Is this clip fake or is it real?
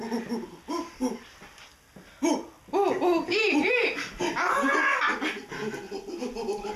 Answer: real